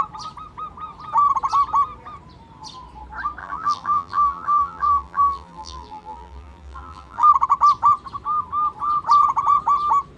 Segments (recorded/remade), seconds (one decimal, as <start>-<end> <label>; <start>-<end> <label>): 0.0-3.4 recorded; 3.4-7.3 remade; 7.3-10.2 recorded